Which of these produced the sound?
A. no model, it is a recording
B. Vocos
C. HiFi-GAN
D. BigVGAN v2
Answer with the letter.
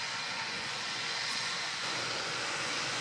B